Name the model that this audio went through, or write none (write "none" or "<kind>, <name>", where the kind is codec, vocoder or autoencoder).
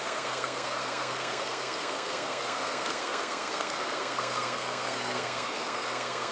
codec, SNAC